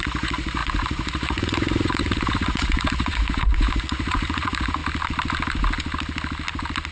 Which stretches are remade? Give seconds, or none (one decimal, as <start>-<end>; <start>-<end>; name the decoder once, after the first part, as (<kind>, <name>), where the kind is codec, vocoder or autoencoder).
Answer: 0.0-4.8 (vocoder, Vocos)